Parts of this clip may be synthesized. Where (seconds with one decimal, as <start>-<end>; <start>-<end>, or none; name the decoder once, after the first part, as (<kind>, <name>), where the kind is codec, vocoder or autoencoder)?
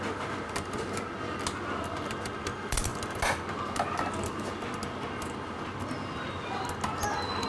none